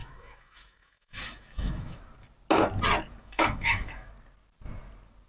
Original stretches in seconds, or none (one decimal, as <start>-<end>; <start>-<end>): 2.0-3.2; 4.1-5.3